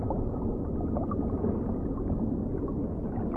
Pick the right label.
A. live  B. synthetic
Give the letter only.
A